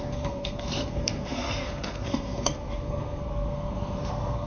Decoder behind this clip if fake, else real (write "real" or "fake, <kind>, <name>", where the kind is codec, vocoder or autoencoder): fake, codec, SNAC